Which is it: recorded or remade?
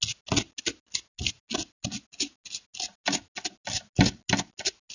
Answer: recorded